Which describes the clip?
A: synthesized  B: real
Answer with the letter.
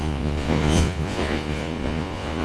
A